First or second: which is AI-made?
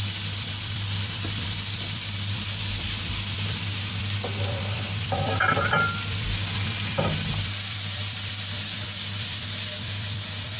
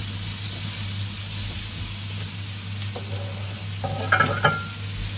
first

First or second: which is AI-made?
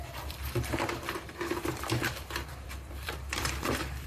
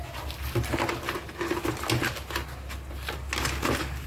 first